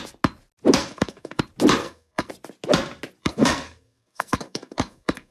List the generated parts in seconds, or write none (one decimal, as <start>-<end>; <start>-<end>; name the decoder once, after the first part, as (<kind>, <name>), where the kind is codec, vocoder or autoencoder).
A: 0.8-1.4 (codec, SNAC); 1.8-2.3; 3.2-5.3